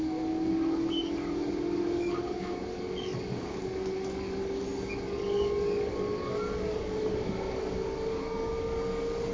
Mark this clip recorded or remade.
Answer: remade